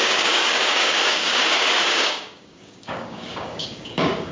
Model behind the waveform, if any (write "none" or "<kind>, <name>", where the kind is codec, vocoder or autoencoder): codec, DAC